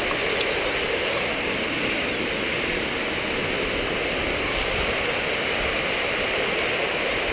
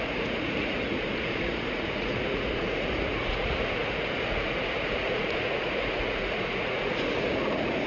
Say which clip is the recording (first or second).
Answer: first